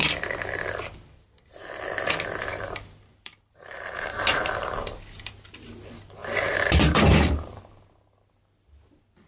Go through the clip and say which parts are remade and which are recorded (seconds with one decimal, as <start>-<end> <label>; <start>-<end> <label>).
0.0-2.5 recorded; 2.5-4.7 remade; 4.7-6.2 recorded; 6.2-7.6 remade; 7.6-9.3 recorded